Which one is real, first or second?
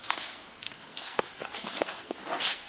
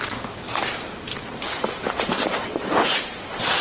second